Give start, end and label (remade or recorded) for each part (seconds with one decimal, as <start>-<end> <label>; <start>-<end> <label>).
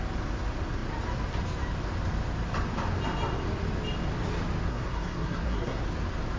0.0-4.7 recorded; 4.7-5.8 remade; 5.8-6.4 recorded